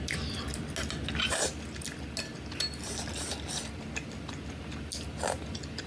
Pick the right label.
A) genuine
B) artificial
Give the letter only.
A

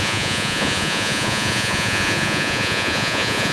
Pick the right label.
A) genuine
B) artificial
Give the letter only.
B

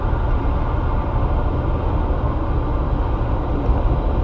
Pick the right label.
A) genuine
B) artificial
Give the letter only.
A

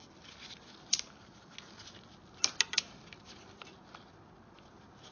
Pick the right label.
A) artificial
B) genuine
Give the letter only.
B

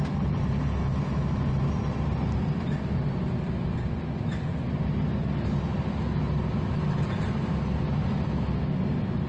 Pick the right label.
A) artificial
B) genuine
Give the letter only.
B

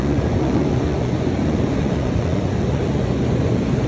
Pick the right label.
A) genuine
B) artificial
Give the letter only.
B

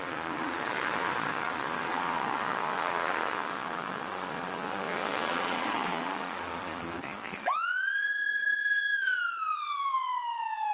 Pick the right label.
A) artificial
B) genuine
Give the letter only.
A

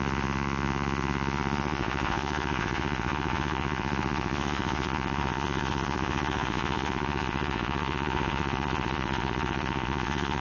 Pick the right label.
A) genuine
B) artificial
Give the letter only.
B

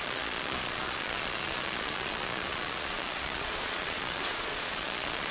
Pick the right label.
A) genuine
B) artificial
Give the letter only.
B